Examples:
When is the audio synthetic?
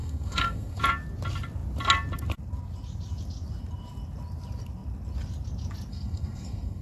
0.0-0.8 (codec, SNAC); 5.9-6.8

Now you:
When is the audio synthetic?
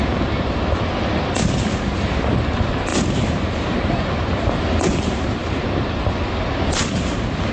none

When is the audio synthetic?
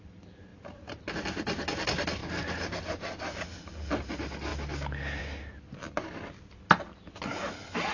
none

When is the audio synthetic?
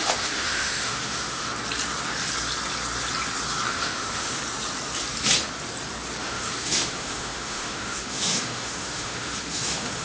0.0-1.5 (autoencoder, DAC-VAE); 3.7-4.4; 6.2-10.0